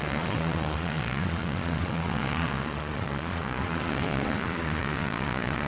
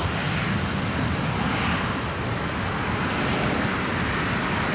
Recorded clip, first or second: second